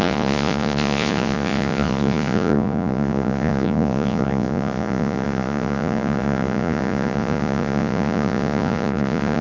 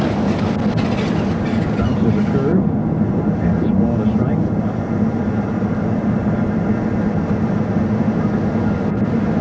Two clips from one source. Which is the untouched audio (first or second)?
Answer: second